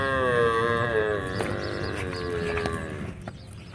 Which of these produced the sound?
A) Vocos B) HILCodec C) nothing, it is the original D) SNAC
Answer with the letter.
C